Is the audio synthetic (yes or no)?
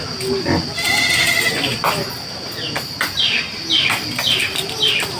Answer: no